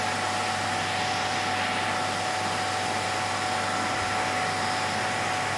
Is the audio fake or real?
real